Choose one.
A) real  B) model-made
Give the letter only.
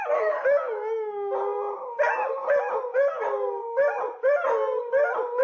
A